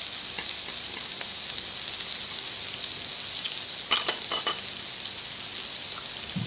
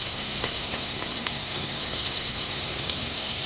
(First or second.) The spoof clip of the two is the second